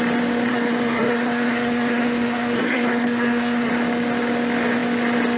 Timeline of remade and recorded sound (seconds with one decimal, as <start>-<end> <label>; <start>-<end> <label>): 0.0-0.5 recorded; 0.5-3.7 remade; 3.7-5.4 recorded